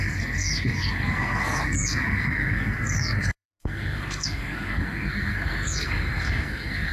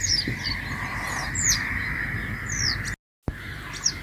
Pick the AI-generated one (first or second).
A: first